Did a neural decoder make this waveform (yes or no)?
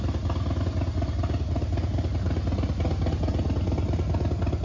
no